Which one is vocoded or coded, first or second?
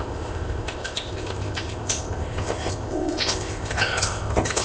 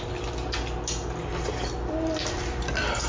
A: first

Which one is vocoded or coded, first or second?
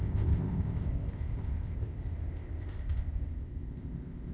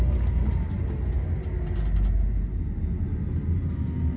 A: first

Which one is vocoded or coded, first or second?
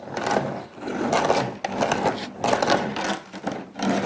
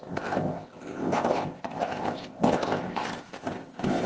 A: second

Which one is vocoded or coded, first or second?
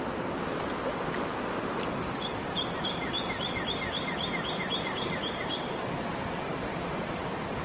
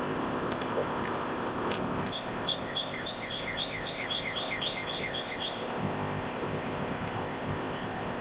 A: second